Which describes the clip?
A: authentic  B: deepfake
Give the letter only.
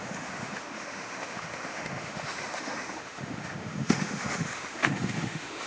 B